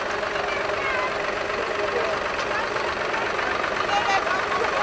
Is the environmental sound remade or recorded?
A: recorded